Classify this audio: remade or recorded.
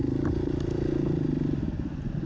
recorded